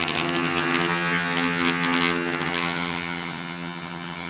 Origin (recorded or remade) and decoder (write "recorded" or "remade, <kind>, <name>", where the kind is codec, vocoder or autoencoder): remade, vocoder, HiFi-GAN